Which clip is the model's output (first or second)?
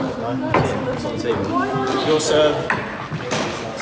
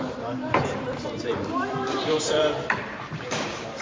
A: second